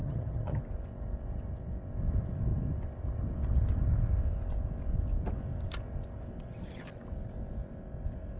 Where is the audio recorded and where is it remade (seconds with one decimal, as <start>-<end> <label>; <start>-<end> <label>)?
0.0-0.6 remade; 0.6-8.4 recorded